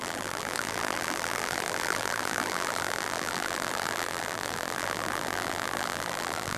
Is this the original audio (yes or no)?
no